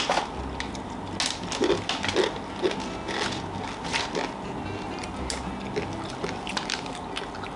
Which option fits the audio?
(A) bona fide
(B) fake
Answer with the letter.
A